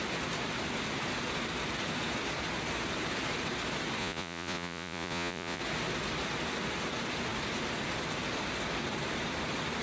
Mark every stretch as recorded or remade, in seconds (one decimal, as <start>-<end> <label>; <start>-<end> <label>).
0.0-4.0 recorded; 4.0-5.6 remade; 5.6-9.8 recorded